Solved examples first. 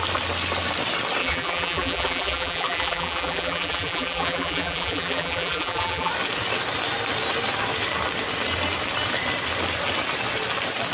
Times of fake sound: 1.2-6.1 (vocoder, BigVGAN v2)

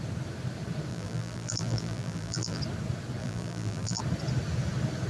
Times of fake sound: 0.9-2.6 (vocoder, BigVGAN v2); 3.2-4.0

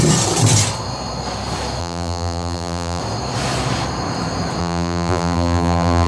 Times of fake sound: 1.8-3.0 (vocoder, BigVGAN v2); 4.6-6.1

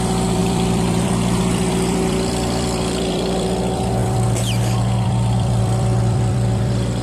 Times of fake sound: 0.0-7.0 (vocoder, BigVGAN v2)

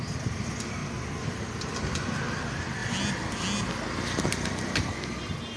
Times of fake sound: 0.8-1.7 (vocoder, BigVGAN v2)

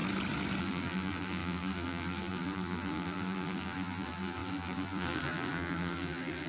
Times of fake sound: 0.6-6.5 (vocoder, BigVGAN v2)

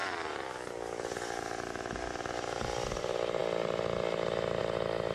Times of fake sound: none